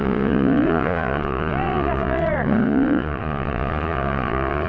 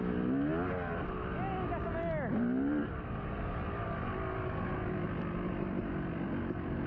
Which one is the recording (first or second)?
second